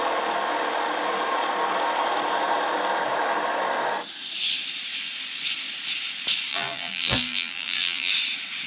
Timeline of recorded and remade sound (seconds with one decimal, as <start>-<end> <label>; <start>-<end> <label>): 0.0-6.5 recorded; 6.5-8.1 remade; 8.1-8.7 recorded